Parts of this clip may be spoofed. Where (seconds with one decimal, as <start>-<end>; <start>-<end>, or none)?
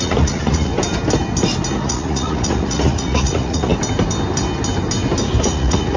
0.0-0.7; 1.7-3.7; 5.4-6.0